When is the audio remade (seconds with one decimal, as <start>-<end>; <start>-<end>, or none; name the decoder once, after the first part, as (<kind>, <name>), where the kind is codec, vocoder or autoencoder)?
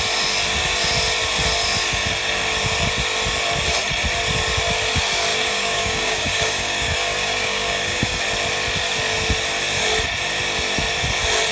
5.3-8.2 (codec, DAC)